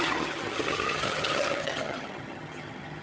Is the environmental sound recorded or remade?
remade